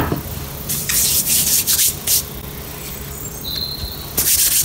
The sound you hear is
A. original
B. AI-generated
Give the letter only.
B